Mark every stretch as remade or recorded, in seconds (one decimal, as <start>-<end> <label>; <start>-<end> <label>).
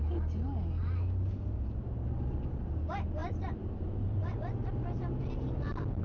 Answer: 0.0-3.2 recorded; 3.2-4.4 remade; 4.4-6.0 recorded